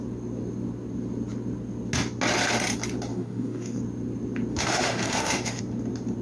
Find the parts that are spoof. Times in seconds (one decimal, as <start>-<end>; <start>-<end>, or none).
3.1-3.8; 4.5-5.6